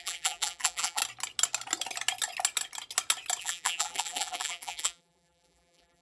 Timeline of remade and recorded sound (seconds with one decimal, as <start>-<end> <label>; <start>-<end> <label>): 0.0-1.0 remade; 1.0-3.4 recorded; 3.4-6.0 remade